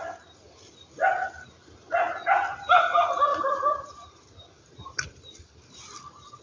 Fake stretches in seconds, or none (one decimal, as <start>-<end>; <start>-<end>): 3.3-6.0